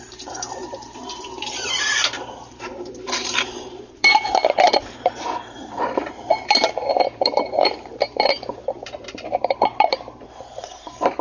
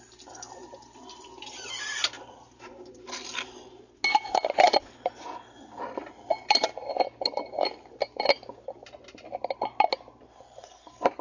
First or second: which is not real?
first